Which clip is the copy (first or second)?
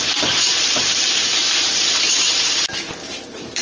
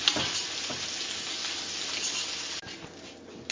first